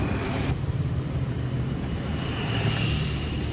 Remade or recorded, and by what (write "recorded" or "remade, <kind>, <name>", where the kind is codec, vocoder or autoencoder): remade, vocoder, BigVGAN v2